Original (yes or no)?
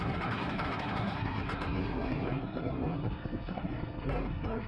no